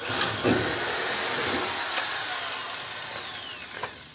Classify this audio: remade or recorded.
recorded